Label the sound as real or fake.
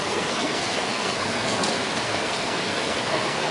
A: fake